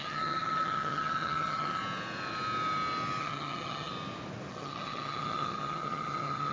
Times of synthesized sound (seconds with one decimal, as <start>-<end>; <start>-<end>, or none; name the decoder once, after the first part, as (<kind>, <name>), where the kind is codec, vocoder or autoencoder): 0.0-1.8 (vocoder, HiFi-GAN); 3.2-3.9; 4.5-6.5